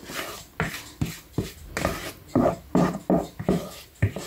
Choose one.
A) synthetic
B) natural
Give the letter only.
B